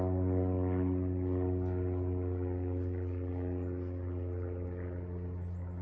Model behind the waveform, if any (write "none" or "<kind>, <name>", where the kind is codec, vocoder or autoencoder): none